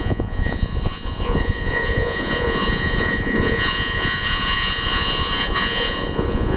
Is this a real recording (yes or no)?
no